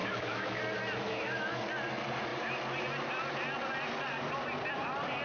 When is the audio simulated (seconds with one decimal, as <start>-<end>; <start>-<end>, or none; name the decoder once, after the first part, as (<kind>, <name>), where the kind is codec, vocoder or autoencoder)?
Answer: 0.0-0.6 (autoencoder, DAC-VAE); 1.0-1.6

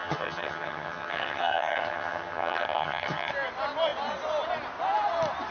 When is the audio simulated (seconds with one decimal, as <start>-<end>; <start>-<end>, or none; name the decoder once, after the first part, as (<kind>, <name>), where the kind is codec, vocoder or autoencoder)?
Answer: 0.0-3.3 (vocoder, HiFi-GAN)